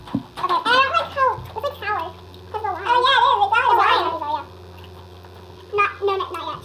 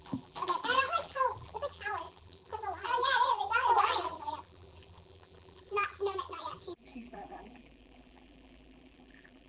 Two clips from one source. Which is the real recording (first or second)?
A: first